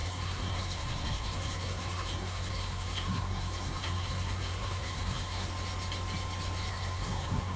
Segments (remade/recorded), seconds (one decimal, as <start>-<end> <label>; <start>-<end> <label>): 0.0-5.5 remade; 5.5-6.7 recorded; 6.7-7.6 remade